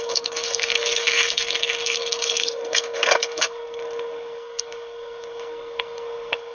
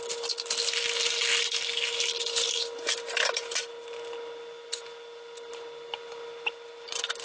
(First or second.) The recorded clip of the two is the second